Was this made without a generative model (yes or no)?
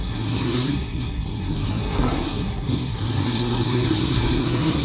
no